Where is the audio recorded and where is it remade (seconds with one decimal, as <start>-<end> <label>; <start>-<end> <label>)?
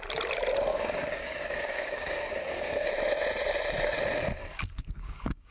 0.0-0.7 recorded; 0.7-2.9 remade; 2.9-4.4 recorded; 4.4-5.5 remade